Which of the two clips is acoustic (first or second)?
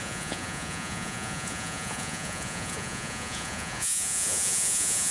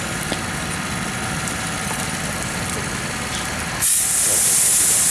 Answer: second